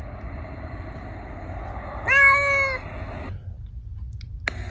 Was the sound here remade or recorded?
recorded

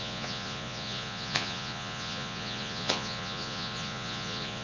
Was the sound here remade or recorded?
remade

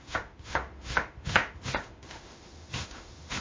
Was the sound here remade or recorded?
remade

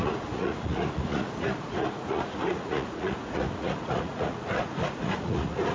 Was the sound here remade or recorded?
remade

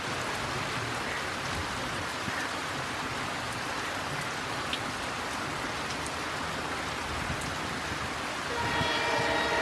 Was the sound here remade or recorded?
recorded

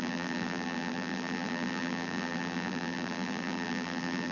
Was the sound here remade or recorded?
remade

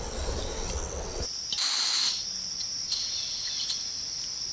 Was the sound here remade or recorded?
recorded